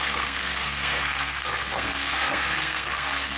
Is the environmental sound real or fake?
fake